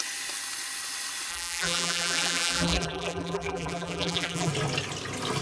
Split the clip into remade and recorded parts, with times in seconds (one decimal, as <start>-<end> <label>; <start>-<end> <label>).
0.0-1.3 recorded; 1.3-4.5 remade; 4.5-5.4 recorded